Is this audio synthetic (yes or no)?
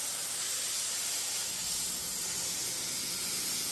no